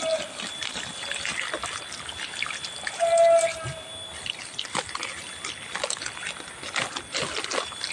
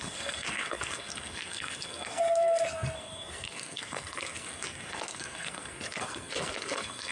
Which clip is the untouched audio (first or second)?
first